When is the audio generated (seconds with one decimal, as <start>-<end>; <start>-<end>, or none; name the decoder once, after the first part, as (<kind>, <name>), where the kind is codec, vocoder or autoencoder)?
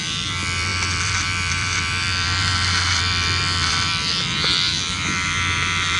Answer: 0.0-6.0 (vocoder, BigVGAN v2)